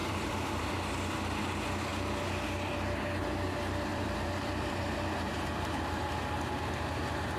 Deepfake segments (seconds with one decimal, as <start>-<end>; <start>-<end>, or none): 0.0-0.7; 3.9-6.2